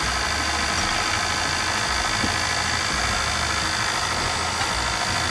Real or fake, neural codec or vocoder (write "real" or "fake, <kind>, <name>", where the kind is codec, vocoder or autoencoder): real